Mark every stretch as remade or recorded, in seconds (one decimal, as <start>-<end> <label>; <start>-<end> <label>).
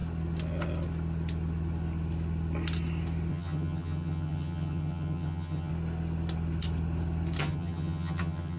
0.0-3.3 recorded; 3.3-5.7 remade; 5.7-7.4 recorded; 7.4-8.6 remade